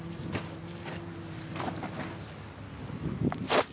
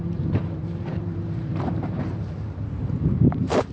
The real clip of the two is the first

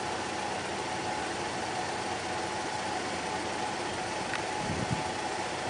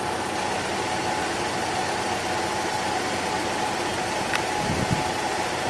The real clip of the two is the second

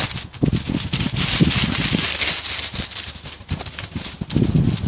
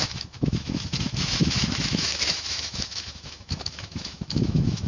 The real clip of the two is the first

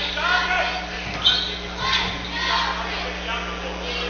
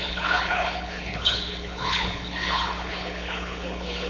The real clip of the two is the first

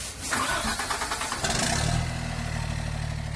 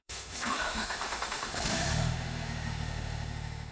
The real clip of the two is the first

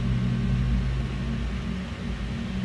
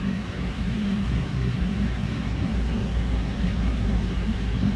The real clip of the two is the first